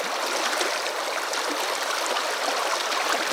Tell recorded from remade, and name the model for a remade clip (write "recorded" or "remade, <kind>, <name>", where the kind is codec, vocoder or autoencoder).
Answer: recorded